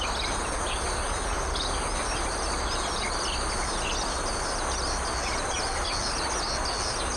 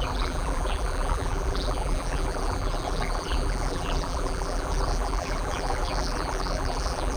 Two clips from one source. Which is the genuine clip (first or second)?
first